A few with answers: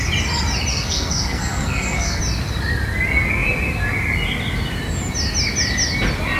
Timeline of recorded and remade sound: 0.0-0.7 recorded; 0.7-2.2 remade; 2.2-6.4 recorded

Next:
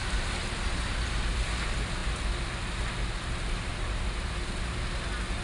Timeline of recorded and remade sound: 0.0-5.4 recorded

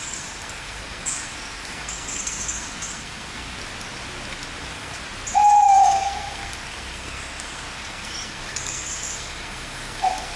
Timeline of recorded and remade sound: 0.0-3.6 remade; 3.6-4.6 recorded; 4.6-5.0 remade; 5.0-5.7 recorded; 5.7-10.4 remade

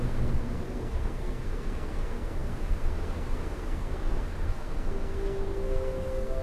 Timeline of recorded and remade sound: 0.0-6.4 remade

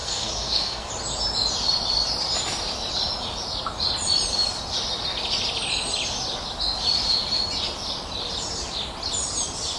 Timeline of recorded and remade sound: 0.0-0.9 remade; 0.9-9.8 recorded

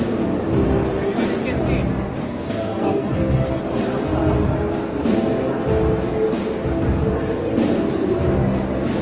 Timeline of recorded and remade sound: 0.0-2.2 recorded; 2.2-3.6 remade; 3.6-9.0 recorded